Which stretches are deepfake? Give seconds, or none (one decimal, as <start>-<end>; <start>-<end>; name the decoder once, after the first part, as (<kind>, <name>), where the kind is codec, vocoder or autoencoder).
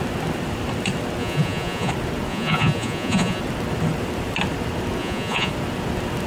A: 1.2-1.9 (vocoder, Vocos); 2.3-3.4; 5.0-5.5